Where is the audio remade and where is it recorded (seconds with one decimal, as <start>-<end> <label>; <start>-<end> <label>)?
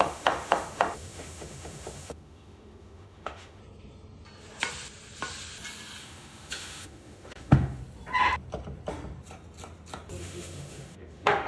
0.0-3.6 remade; 3.6-6.0 recorded; 6.0-7.8 remade; 7.8-10.2 recorded; 10.2-11.5 remade